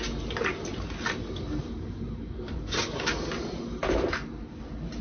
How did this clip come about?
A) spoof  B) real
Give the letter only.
B